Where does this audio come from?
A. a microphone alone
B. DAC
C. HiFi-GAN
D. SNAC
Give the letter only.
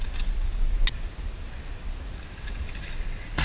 A